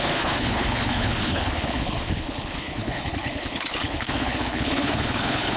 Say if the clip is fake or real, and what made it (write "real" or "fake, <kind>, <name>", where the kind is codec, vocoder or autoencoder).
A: fake, codec, HILCodec